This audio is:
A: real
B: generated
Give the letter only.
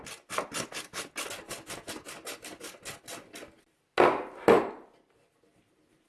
A